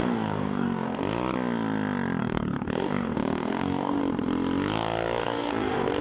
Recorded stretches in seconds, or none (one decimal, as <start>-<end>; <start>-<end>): 1.0-2.2; 4.0-5.2